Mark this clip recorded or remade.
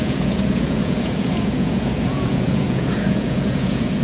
remade